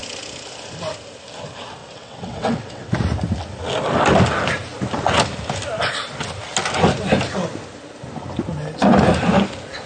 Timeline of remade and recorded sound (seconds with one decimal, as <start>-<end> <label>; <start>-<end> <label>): 0.0-1.8 recorded; 1.8-2.9 remade; 2.9-9.9 recorded

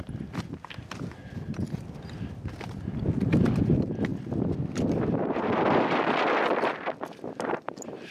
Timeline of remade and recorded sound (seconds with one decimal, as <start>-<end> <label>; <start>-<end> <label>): 0.0-4.1 recorded; 4.1-8.1 remade

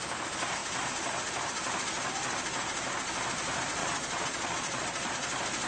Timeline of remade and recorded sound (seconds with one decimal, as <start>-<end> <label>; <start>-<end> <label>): 0.0-3.8 recorded; 3.8-5.1 remade; 5.1-5.7 recorded

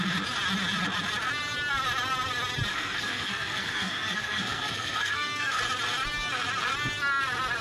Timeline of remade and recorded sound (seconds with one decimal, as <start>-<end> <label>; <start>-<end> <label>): 0.0-2.7 recorded; 2.7-5.6 remade; 5.6-7.6 recorded